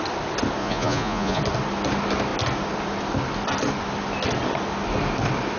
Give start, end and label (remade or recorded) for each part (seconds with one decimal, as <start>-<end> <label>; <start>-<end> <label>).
0.0-0.6 recorded; 0.6-1.4 remade; 1.4-5.6 recorded